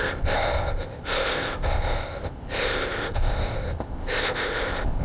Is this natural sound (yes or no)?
no